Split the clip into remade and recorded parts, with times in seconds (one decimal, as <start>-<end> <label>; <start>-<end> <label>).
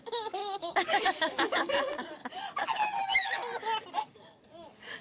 0.0-2.2 remade; 2.2-3.0 recorded; 3.0-3.4 remade; 3.4-4.1 recorded; 4.1-5.0 remade